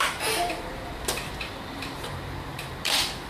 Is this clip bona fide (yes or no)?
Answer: no